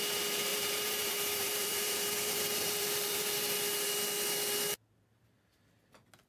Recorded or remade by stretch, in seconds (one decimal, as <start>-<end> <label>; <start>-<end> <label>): 0.0-0.5 recorded; 0.5-3.9 remade; 3.9-6.3 recorded

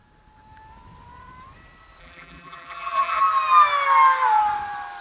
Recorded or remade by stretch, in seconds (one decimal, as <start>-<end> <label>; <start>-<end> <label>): 0.0-2.0 recorded; 2.0-3.2 remade; 3.2-5.0 recorded

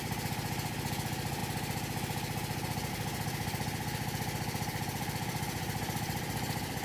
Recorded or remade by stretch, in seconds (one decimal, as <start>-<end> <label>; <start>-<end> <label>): 0.0-1.4 remade; 1.4-2.9 recorded; 2.9-6.8 remade

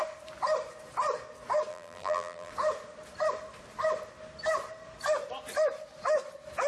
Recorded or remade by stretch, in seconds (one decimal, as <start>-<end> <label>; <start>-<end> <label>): 0.0-1.7 recorded; 1.7-2.5 remade; 2.5-6.7 recorded